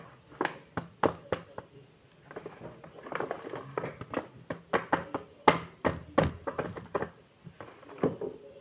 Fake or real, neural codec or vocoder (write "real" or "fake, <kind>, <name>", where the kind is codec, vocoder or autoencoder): real